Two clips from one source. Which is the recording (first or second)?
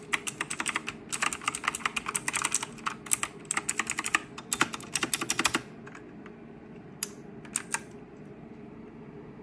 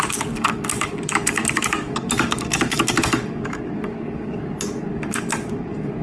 first